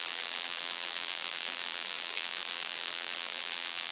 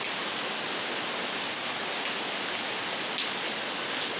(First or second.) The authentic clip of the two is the second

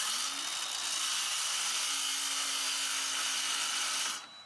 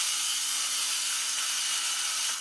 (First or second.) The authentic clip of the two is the first